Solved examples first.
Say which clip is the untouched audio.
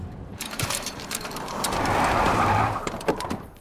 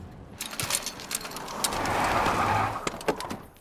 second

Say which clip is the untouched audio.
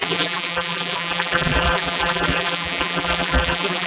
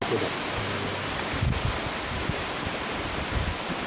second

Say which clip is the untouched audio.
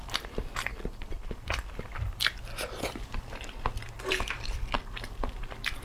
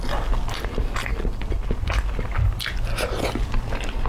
second